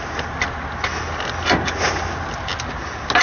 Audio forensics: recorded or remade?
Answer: recorded